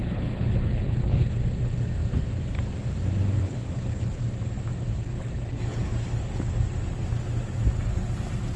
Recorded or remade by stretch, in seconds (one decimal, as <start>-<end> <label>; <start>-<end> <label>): 0.0-1.3 remade; 1.3-3.4 recorded; 3.4-4.2 remade; 4.2-4.9 recorded; 4.9-6.2 remade; 6.2-8.6 recorded